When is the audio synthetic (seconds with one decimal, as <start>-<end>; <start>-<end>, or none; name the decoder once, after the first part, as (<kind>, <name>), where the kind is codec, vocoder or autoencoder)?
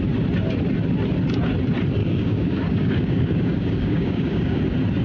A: 2.0-4.6 (codec, DAC)